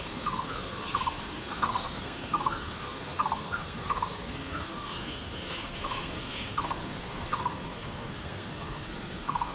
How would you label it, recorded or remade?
remade